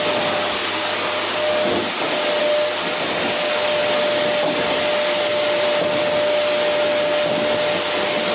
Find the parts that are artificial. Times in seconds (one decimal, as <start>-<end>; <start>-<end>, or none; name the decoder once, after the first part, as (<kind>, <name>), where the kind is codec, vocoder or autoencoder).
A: none